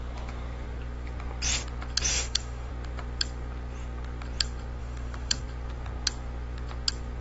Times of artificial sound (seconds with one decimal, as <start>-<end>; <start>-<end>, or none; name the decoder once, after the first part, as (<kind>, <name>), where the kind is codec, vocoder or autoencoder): 2.1-2.7 (autoencoder, DAC-VAE); 4.8-5.4